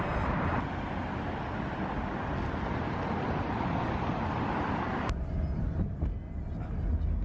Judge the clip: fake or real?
real